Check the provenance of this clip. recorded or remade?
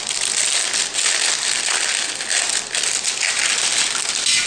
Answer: recorded